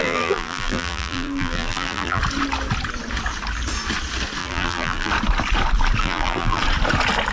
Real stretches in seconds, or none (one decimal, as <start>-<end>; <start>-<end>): 2.2-4.4; 5.1-6.0; 6.6-7.3